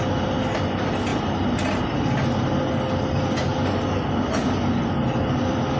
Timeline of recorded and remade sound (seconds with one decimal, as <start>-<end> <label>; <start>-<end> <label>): 0.0-5.8 recorded